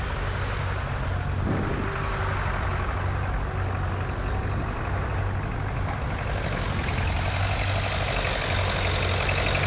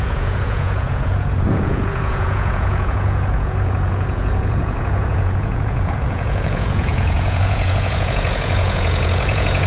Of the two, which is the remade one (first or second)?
second